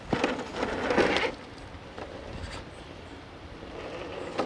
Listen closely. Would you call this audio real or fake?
real